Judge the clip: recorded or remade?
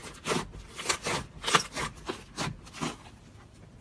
recorded